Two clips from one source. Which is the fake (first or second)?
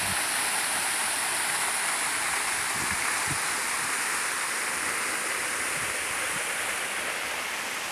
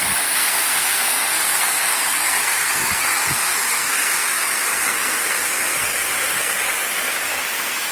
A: second